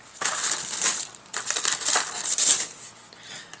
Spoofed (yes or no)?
no